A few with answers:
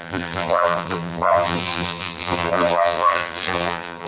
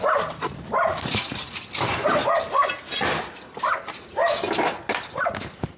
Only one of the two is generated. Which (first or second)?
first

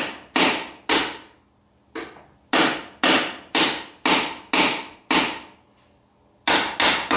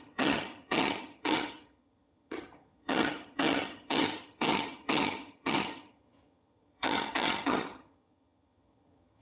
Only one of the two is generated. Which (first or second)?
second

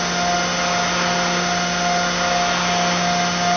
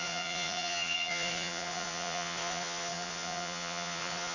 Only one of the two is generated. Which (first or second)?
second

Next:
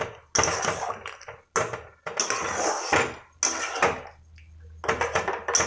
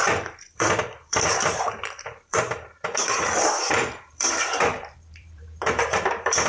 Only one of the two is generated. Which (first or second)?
second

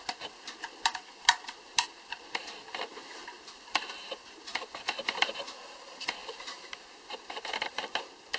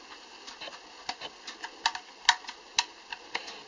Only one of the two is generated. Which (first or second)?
first